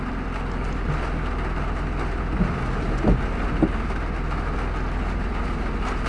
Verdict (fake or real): real